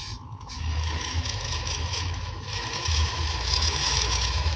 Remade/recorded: remade